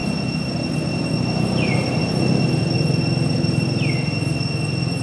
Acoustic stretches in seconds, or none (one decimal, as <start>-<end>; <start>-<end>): 0.0-5.0